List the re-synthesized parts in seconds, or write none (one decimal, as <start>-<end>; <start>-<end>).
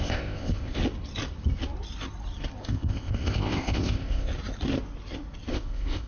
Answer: 0.0-0.8; 2.6-4.3; 5.5-6.1